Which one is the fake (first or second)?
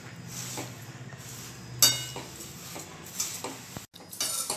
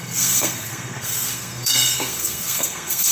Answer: second